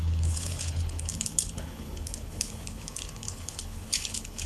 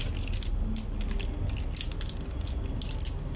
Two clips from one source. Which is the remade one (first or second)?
first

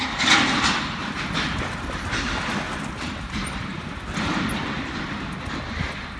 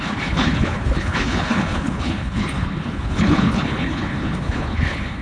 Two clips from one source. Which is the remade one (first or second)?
second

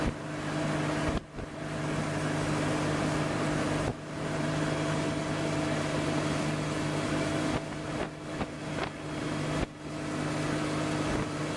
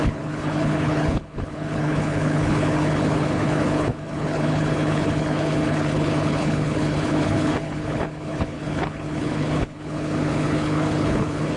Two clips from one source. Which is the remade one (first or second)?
second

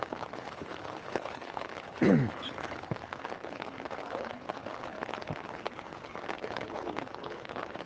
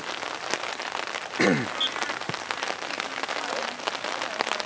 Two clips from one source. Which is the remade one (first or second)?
first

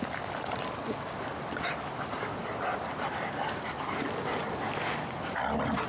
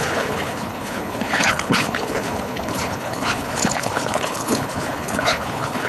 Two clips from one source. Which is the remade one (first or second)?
second